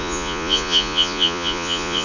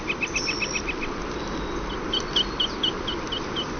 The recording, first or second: second